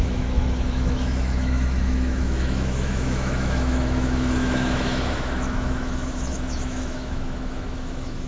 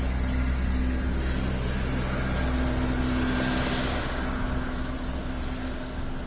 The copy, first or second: first